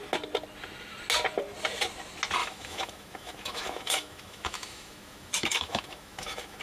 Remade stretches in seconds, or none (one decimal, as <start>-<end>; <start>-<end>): 2.4-6.6